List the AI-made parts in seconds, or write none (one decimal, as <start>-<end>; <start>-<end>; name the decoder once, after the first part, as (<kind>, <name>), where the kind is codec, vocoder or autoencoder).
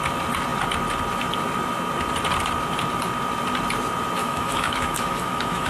4.2-5.7 (autoencoder, DAC-VAE)